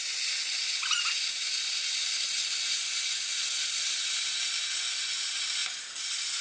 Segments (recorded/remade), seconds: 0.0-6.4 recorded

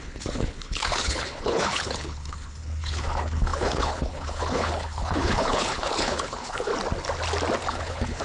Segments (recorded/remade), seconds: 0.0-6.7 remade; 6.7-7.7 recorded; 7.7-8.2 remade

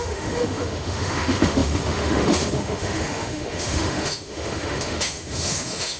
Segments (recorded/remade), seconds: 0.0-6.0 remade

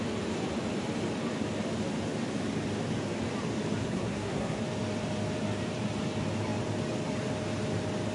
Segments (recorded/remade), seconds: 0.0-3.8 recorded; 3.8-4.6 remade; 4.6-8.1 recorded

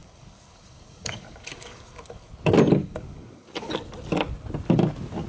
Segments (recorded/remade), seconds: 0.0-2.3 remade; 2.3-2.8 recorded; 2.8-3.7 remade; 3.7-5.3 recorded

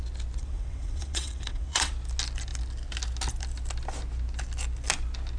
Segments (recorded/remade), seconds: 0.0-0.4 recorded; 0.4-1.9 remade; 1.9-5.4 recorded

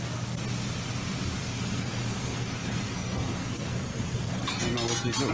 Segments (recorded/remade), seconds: 0.0-1.4 recorded; 1.4-4.6 remade; 4.6-5.3 recorded

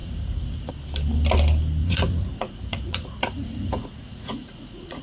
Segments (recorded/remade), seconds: 0.0-0.7 remade; 0.7-1.8 recorded; 1.8-5.0 remade